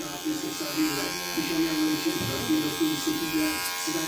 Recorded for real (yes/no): yes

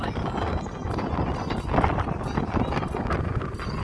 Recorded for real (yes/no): yes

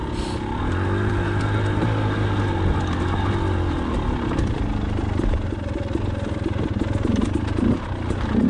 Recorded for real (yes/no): yes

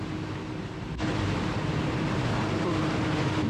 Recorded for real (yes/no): yes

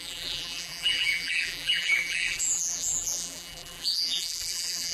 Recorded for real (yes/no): no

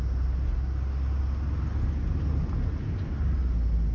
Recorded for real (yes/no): yes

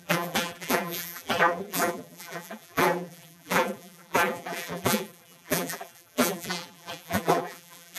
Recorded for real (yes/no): no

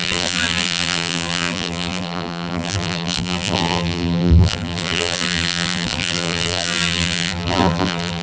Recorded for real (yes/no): no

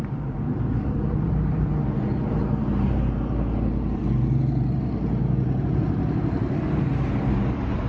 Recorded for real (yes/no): no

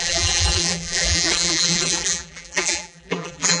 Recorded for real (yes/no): no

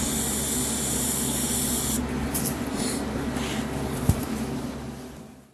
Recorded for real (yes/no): yes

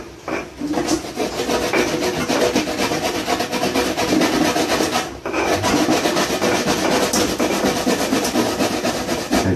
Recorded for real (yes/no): yes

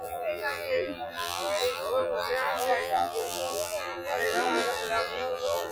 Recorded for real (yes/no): no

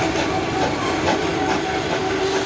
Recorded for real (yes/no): yes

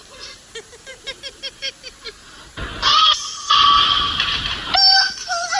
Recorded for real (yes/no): yes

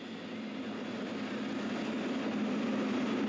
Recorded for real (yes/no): yes